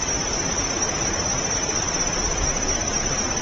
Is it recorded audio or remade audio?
recorded